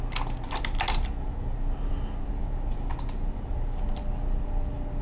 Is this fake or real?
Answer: real